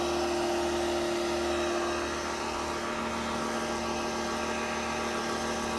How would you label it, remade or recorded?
recorded